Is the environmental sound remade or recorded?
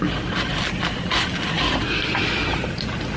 recorded